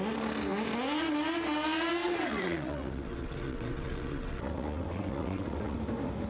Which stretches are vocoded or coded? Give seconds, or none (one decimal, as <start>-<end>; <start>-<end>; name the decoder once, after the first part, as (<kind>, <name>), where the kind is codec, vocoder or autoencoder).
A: 2.0-5.8 (vocoder, WaveNeXt)

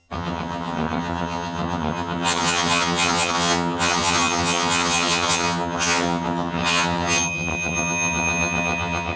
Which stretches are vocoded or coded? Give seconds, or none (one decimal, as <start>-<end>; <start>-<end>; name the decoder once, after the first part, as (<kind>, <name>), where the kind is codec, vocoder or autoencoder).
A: 0.0-9.2 (vocoder, HiFi-GAN)

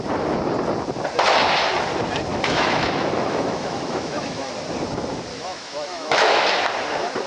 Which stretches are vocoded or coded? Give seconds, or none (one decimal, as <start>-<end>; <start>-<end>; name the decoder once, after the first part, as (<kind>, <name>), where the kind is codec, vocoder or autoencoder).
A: 2.3-4.5 (autoencoder, DAC-VAE); 5.3-6.4

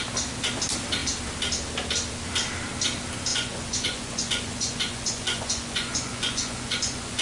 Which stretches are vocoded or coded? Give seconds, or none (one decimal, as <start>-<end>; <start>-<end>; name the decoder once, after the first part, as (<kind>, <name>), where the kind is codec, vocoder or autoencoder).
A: 3.3-7.2 (vocoder, Vocos)

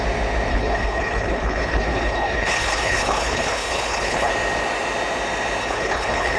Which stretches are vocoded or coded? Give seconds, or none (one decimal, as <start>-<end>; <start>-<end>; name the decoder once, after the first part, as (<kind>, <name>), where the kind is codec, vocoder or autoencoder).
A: 0.5-4.3 (codec, HILCodec); 5.6-6.4

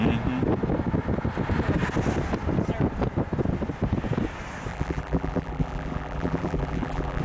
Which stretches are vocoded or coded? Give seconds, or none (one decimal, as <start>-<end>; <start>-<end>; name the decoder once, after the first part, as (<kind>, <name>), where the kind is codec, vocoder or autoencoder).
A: 4.7-7.2 (vocoder, BigVGAN v2)

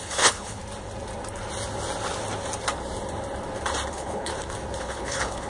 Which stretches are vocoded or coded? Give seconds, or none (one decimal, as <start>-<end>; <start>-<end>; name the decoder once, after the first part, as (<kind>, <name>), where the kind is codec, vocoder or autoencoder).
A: 0.0-0.6 (codec, HILCodec); 3.9-4.3; 4.8-5.5

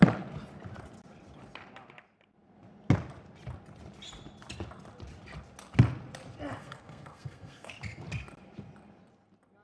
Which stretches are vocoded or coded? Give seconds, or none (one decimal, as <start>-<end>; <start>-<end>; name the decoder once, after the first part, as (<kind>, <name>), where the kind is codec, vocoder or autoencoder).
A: 6.6-7.7 (codec, SNAC)